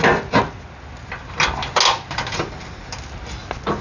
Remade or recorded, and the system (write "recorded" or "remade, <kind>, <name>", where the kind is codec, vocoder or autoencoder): recorded